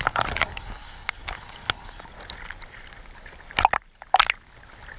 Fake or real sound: real